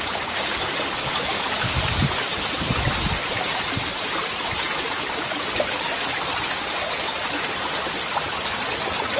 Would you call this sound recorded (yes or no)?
yes